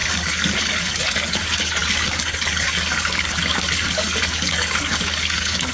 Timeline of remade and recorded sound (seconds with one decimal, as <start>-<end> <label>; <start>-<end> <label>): 0.0-5.7 remade